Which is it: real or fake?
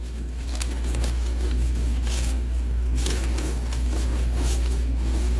fake